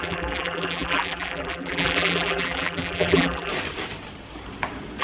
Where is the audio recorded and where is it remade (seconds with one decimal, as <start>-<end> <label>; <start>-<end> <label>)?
0.0-3.5 remade; 3.5-5.0 recorded